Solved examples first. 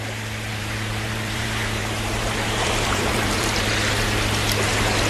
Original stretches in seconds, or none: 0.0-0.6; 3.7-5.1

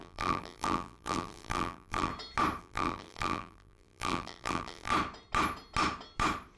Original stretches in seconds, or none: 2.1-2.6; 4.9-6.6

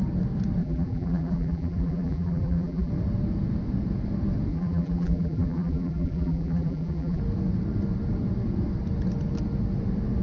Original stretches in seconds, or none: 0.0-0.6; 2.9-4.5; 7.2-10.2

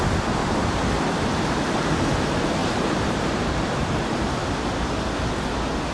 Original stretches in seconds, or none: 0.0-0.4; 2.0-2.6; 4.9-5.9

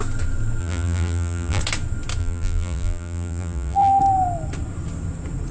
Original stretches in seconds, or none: 0.0-0.6; 1.6-2.2; 4.0-5.5

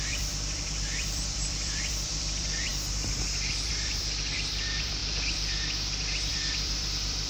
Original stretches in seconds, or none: 2.7-3.7; 5.0-6.3